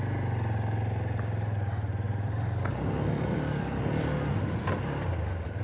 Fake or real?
real